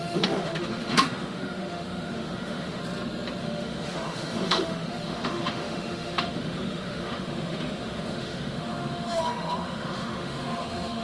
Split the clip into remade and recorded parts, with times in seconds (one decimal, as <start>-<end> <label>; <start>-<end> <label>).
0.0-2.8 remade; 2.8-3.4 recorded; 3.4-11.0 remade